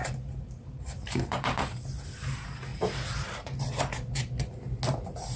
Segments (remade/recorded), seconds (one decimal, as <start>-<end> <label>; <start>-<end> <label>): 0.0-1.6 remade; 1.6-5.4 recorded